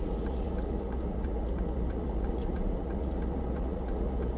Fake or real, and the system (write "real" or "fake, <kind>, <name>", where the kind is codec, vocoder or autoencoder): fake, vocoder, Vocos